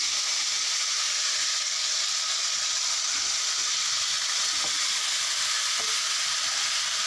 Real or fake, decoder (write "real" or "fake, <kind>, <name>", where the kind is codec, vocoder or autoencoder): real